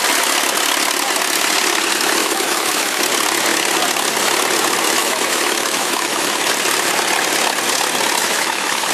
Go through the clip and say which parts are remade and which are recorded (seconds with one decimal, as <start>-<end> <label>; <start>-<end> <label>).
0.0-2.2 recorded; 2.2-3.0 remade; 3.0-5.0 recorded; 5.0-6.5 remade; 6.5-8.2 recorded; 8.2-8.9 remade